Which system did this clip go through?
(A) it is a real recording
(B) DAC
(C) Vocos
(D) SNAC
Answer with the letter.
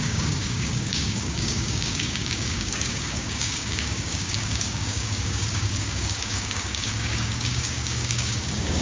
B